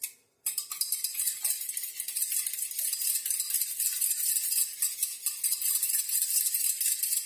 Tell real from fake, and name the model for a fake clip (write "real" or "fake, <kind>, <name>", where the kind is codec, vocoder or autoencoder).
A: real